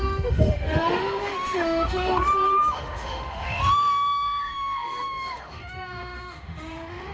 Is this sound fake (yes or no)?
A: yes